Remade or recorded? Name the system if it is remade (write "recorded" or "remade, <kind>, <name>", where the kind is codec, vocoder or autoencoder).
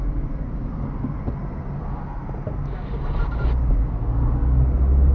recorded